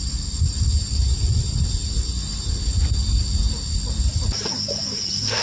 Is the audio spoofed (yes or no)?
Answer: no